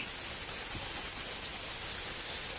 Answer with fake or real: real